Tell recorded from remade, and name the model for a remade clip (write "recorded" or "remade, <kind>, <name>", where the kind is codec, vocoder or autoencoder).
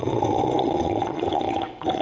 remade, vocoder, WaveNeXt